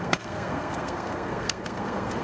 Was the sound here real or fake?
fake